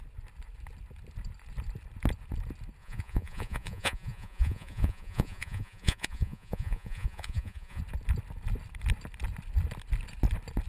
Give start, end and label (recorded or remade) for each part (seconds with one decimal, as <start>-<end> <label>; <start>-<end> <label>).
0.0-2.8 recorded; 2.8-7.8 remade; 7.8-10.7 recorded